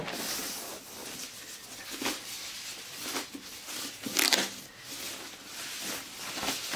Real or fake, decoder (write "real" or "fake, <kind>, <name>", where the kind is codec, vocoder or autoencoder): real